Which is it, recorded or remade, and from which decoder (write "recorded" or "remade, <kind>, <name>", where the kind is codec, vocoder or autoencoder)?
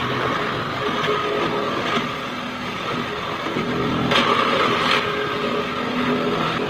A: recorded